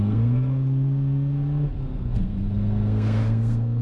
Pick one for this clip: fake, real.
fake